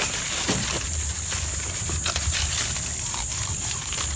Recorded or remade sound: recorded